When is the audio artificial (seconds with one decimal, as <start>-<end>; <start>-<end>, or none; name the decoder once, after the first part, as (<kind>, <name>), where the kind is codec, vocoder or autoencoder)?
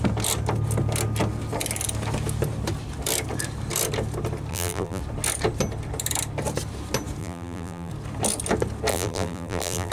4.5-5.0 (vocoder, BigVGAN v2); 7.2-7.9; 8.9-9.9